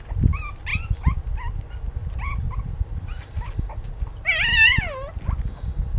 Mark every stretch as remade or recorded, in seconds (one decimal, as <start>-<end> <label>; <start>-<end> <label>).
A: 0.0-6.0 recorded